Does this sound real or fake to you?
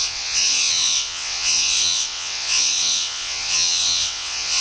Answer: fake